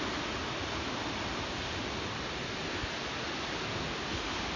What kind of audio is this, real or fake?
real